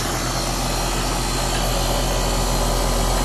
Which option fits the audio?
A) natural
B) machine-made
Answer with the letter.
A